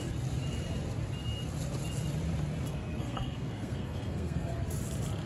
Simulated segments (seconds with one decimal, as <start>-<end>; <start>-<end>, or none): 2.7-4.6